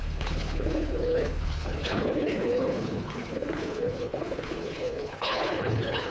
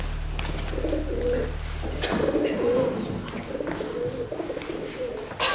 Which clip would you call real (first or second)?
second